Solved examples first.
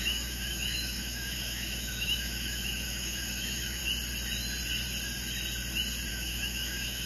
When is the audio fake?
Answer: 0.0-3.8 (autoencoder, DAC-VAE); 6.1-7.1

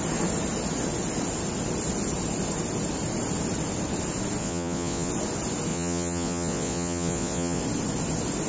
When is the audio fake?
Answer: 4.4-5.1 (vocoder, Vocos); 5.7-7.6

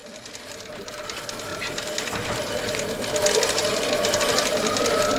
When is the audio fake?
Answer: 0.0-1.5 (vocoder, BigVGAN v2); 2.1-3.6; 4.2-5.2

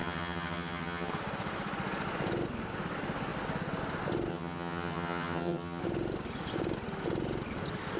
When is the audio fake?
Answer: 0.0-1.1 (vocoder, HiFi-GAN); 4.3-5.8

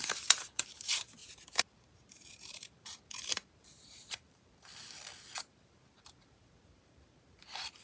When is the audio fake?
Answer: 0.0-4.7 (vocoder, BigVGAN v2); 5.4-7.8